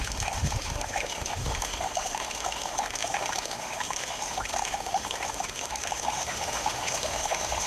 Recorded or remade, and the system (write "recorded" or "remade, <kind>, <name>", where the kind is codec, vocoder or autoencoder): remade, autoencoder, DAC-VAE